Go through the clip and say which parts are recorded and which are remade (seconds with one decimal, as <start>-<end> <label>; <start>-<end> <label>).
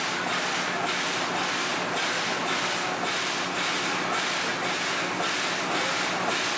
0.0-6.6 recorded